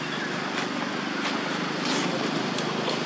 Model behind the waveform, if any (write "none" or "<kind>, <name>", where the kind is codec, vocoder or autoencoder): none